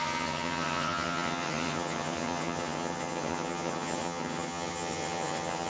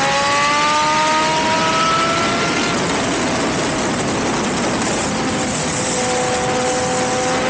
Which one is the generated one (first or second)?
first